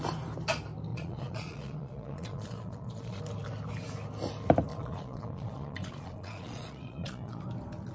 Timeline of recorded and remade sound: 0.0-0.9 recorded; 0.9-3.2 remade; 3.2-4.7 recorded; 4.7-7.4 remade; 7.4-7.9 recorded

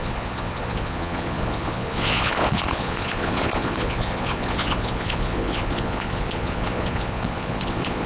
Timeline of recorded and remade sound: 0.0-8.1 remade

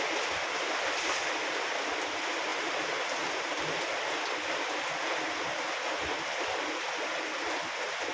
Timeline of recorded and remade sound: 0.0-8.1 recorded

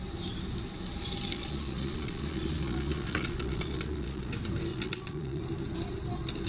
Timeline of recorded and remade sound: 0.0-1.3 recorded; 1.3-4.3 remade; 4.3-4.7 recorded; 4.7-5.4 remade; 5.4-6.5 recorded

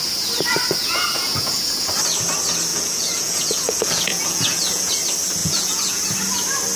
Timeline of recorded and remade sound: 0.0-0.8 recorded; 0.8-1.9 remade; 1.9-2.7 recorded; 2.7-4.9 remade; 4.9-5.4 recorded; 5.4-6.0 remade; 6.0-6.8 recorded

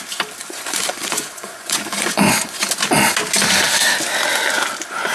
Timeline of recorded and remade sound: 0.0-0.4 recorded; 0.4-2.6 remade; 2.6-5.1 recorded